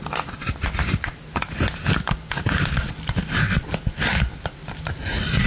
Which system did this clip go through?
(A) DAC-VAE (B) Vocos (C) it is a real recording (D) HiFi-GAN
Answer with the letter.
C